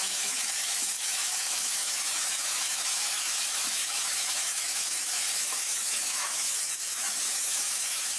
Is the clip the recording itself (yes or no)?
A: no